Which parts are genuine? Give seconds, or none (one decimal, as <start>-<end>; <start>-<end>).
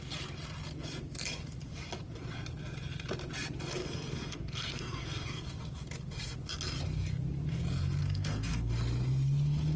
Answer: 0.0-3.8; 5.5-8.0; 8.7-9.8